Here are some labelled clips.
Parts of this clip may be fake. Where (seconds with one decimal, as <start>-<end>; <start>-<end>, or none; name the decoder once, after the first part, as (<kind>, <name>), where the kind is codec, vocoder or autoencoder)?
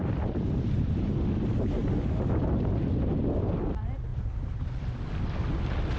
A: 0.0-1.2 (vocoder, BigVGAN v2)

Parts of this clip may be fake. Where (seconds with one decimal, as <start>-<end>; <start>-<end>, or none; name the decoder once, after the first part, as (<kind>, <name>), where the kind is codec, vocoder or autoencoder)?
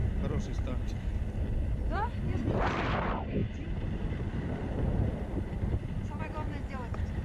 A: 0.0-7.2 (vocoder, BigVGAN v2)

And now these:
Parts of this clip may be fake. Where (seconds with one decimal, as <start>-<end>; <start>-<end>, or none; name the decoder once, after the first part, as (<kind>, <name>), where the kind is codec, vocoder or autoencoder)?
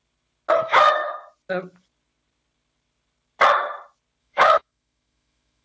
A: 0.6-1.0 (autoencoder, DAC-VAE); 4.2-5.6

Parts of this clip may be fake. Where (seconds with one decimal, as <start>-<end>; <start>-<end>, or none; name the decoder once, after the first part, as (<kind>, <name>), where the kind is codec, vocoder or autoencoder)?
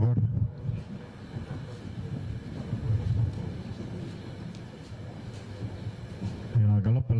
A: 4.8-5.4 (vocoder, BigVGAN v2)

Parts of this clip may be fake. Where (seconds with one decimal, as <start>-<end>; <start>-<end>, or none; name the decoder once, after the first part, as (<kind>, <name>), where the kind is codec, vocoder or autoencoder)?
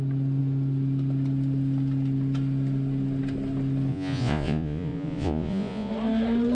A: 3.9-5.9 (vocoder, Vocos)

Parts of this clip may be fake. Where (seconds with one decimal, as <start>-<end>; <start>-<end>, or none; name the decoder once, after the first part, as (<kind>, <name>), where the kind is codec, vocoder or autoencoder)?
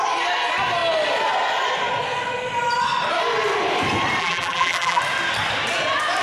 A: 4.2-5.0 (vocoder, BigVGAN v2)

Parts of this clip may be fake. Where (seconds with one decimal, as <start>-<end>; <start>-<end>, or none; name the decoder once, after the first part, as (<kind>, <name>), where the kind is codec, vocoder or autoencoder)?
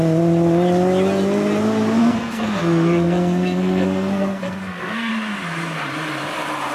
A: 2.0-5.1 (codec, SNAC)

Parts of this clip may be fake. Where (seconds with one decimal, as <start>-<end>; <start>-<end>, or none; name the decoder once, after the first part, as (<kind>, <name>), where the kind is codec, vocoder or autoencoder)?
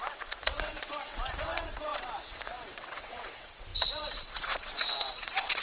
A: 0.0-5.6 (vocoder, WaveNeXt)